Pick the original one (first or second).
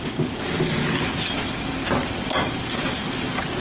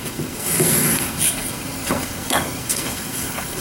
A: first